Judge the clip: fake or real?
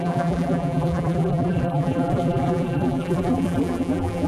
fake